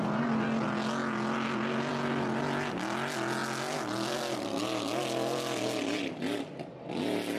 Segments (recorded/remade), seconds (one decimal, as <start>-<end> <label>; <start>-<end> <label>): 0.0-7.4 recorded